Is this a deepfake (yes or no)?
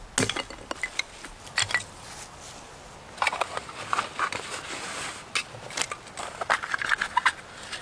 no